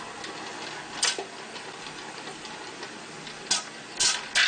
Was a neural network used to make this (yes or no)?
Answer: no